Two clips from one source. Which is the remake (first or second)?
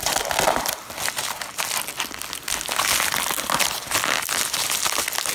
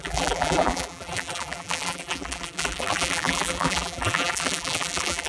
second